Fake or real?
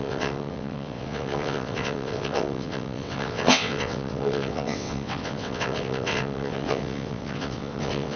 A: fake